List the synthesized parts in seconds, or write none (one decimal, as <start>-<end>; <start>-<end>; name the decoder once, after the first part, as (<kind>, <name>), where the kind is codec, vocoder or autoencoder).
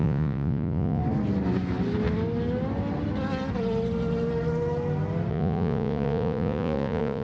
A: 0.0-1.0 (vocoder, Vocos); 5.3-7.2